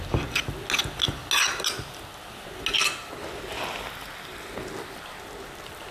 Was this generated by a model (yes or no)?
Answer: no